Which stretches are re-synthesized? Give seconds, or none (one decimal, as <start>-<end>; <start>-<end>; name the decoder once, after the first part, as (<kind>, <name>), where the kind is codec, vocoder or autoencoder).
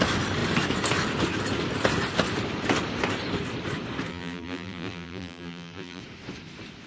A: 4.1-6.0 (vocoder, BigVGAN v2)